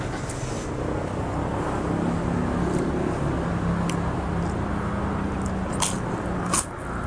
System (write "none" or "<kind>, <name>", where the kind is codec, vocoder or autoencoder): none